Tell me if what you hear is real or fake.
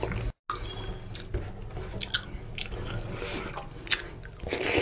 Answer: real